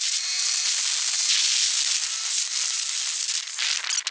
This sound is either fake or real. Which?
real